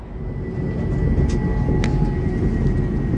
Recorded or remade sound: recorded